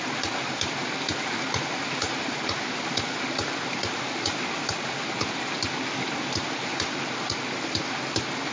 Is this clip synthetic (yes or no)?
no